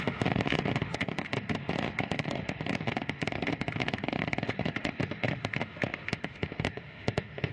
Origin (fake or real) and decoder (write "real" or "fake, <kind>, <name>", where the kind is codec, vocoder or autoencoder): fake, autoencoder, DAC-VAE